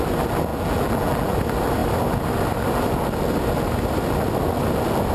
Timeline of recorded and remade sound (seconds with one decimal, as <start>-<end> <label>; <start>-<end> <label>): 0.0-0.5 recorded; 0.5-1.4 remade; 1.4-5.1 recorded